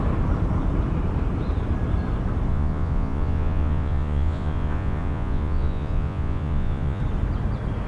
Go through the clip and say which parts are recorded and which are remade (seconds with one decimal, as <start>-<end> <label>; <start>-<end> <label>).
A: 0.0-2.5 recorded; 2.5-7.0 remade; 7.0-7.9 recorded